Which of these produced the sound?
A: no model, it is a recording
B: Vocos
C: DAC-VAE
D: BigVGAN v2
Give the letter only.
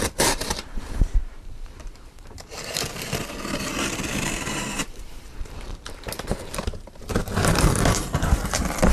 D